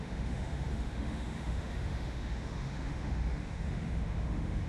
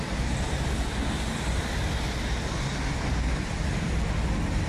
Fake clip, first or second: first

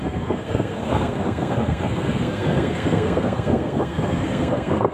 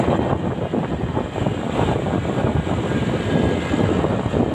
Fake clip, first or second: first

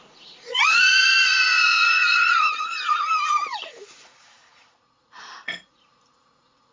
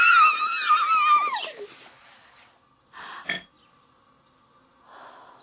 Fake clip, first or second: first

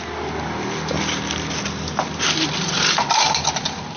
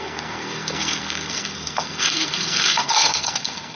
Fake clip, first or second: second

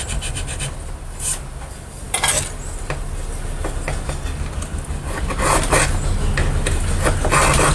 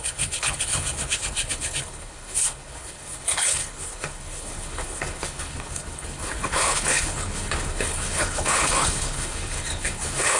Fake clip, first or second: second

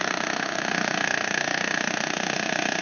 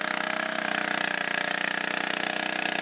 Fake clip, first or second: first